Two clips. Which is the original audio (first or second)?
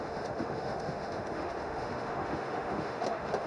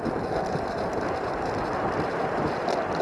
second